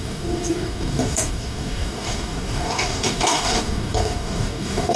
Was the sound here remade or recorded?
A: remade